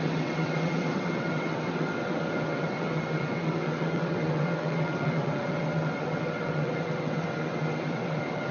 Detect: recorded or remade remade